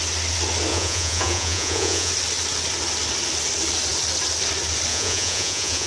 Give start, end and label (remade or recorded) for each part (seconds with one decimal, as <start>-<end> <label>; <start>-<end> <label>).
0.0-0.7 recorded; 0.7-2.1 remade; 2.1-4.9 recorded; 4.9-5.9 remade